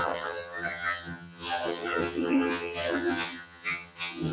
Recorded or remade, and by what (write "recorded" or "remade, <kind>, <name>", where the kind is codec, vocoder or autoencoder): remade, vocoder, HiFi-GAN